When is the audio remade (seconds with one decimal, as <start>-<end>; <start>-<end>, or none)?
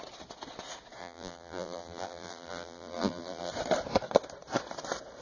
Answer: 1.0-3.5